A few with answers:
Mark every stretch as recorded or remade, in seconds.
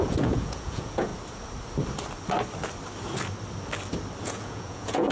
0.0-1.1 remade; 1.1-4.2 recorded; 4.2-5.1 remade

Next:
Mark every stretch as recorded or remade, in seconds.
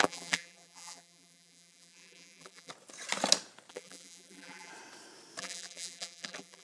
0.0-2.7 remade; 2.7-3.7 recorded; 3.7-4.7 remade; 4.7-5.4 recorded; 5.4-6.6 remade